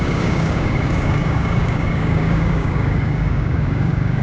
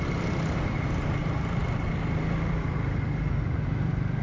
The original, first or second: second